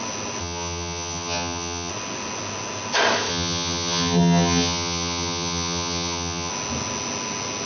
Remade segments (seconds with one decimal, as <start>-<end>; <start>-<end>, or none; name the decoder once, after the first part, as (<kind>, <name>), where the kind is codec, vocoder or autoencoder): 0.4-1.9 (vocoder, HiFi-GAN); 3.3-6.5